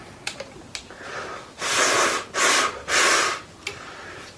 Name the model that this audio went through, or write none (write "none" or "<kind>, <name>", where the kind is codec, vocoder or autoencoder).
none